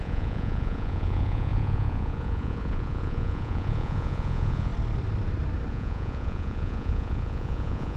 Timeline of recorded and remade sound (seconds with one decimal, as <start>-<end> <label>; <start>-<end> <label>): 0.0-4.7 remade; 4.7-5.7 recorded; 5.7-8.0 remade